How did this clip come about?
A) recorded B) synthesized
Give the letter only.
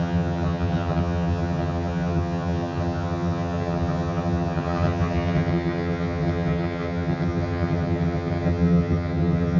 B